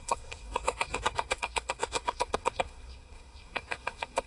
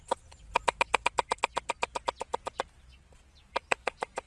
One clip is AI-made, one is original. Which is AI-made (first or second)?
first